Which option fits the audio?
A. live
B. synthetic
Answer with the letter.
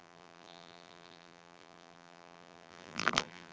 B